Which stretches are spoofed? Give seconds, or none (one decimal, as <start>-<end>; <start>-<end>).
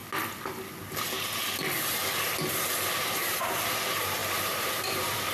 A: 3.2-5.3